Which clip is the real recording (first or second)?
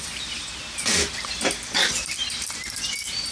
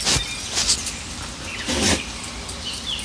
second